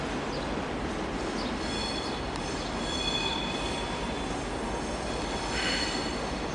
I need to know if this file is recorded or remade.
recorded